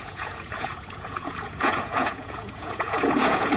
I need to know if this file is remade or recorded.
remade